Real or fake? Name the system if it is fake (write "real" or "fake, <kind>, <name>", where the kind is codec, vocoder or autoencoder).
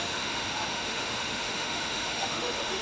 fake, autoencoder, DAC-VAE